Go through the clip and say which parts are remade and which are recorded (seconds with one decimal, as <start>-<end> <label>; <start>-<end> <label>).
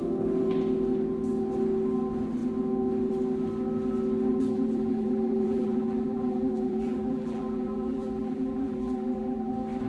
0.0-4.3 recorded; 4.3-9.5 remade; 9.5-9.9 recorded